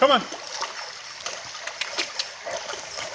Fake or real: real